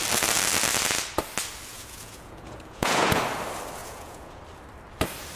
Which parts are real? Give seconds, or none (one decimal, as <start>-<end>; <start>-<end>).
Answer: 0.0-1.7; 3.2-3.8; 4.4-5.4

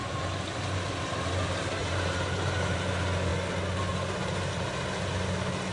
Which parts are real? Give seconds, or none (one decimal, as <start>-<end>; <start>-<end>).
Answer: 1.3-1.8; 2.9-5.7

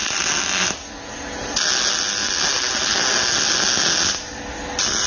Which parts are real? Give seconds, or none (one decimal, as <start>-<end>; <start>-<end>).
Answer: 0.0-5.1

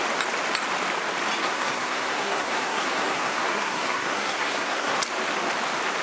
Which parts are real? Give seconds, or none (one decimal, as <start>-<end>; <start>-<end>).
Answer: 0.0-1.4; 5.0-6.0

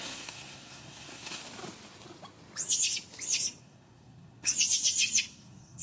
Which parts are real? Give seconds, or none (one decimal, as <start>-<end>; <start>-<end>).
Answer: 1.4-3.6; 4.5-5.3

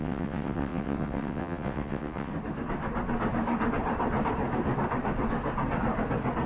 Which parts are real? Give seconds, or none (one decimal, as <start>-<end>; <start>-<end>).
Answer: 2.3-6.5